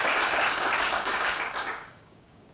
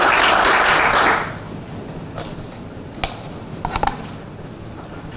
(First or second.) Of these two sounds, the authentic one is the second